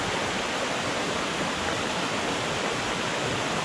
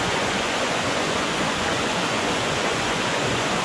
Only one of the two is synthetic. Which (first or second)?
second